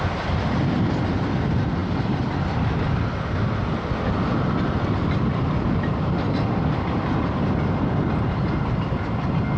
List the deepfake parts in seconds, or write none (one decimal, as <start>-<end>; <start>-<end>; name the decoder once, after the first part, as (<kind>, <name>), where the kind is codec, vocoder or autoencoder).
none

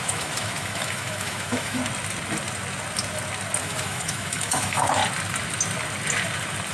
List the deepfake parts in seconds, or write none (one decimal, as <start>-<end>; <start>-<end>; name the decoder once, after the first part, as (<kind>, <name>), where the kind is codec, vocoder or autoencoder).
0.0-1.8 (autoencoder, DAC-VAE); 3.6-5.0

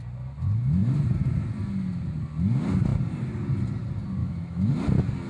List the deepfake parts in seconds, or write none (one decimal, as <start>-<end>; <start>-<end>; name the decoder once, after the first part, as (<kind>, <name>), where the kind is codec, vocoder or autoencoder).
4.2-4.7 (autoencoder, DAC-VAE)

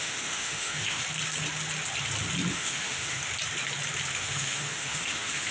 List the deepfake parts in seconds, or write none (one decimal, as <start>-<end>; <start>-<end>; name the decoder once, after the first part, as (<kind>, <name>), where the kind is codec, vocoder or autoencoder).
0.0-1.0 (autoencoder, DAC-VAE); 2.5-3.2; 4.2-5.5

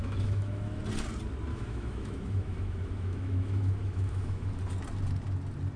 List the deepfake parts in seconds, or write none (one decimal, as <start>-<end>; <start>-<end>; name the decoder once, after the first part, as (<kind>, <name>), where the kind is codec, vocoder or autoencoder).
0.0-0.8 (autoencoder, DAC-VAE); 1.5-4.6

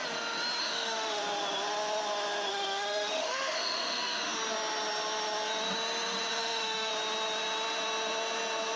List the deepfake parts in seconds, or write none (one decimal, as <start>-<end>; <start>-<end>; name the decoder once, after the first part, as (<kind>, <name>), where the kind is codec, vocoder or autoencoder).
0.6-1.2 (autoencoder, DAC-VAE); 2.5-4.4; 6.3-6.9